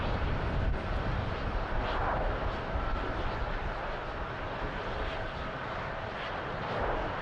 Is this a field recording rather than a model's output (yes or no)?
yes